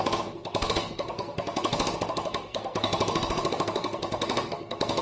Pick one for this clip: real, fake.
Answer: fake